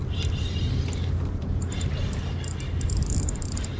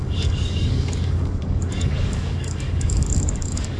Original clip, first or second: first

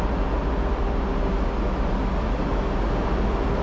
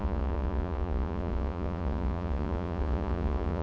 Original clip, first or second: first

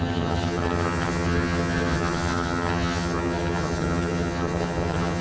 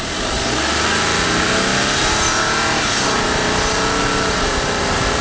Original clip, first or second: second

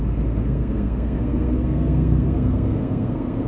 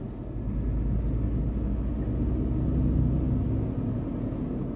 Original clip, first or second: second